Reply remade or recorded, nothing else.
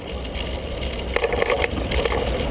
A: recorded